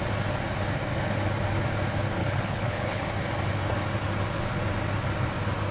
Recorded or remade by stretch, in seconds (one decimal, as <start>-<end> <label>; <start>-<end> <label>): 0.0-2.2 recorded; 2.2-3.1 remade; 3.1-5.7 recorded